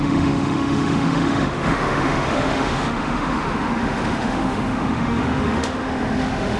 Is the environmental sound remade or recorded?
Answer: remade